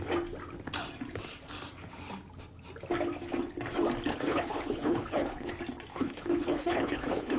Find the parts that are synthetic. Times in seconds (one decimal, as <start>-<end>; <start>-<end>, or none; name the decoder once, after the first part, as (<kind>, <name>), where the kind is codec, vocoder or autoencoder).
4.1-5.5 (codec, HILCodec); 5.9-7.4